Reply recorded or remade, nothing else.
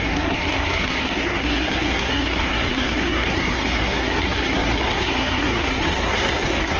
remade